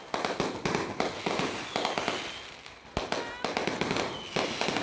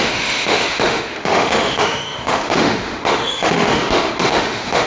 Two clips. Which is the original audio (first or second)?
first